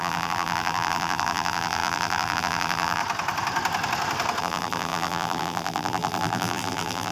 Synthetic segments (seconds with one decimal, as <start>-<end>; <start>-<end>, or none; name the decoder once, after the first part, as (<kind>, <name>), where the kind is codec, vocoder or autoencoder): 0.0-3.0 (vocoder, BigVGAN v2); 4.4-7.1